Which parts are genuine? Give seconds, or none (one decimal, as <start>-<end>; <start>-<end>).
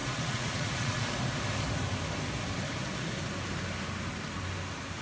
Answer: 1.0-5.0